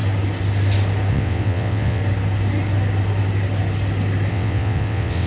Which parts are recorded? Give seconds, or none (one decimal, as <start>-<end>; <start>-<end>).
0.0-1.1; 2.0-4.3